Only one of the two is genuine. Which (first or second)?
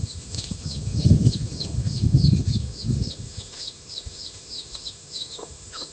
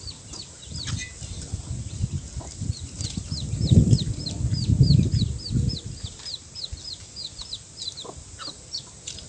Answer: second